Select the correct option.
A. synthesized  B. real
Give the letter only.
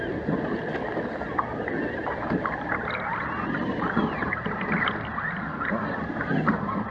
B